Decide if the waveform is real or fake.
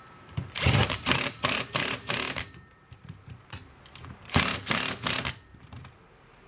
fake